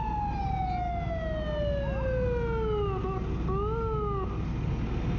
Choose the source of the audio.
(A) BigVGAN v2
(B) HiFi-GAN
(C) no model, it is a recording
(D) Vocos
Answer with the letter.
C